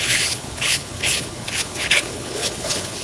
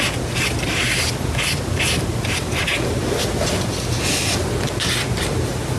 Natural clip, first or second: second